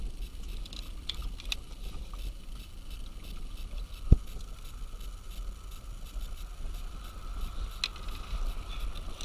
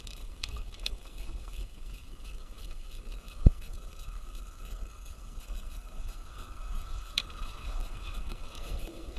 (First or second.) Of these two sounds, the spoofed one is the second